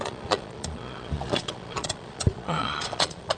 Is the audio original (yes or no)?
no